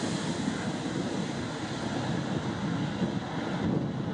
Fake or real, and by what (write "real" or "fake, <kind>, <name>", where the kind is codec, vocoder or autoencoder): real